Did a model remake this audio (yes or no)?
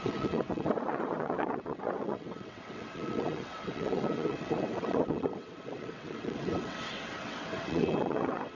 yes